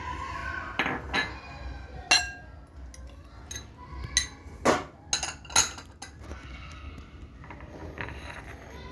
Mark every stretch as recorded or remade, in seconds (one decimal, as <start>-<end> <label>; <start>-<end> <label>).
0.0-6.3 recorded; 6.3-6.9 remade; 6.9-8.9 recorded